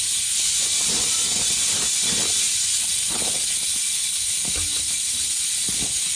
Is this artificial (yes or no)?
no